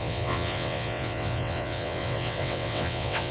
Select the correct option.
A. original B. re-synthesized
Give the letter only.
B